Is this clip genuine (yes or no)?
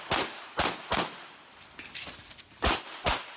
yes